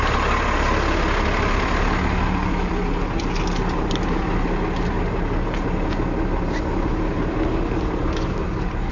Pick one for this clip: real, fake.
real